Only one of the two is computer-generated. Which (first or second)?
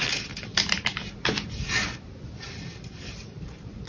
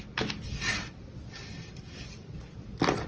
first